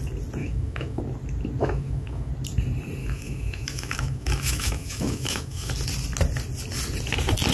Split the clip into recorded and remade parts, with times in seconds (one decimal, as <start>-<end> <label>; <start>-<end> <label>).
0.0-0.4 recorded; 0.4-1.0 remade; 1.0-1.6 recorded; 1.6-2.3 remade; 2.3-3.0 recorded; 3.0-5.7 remade; 5.7-7.5 recorded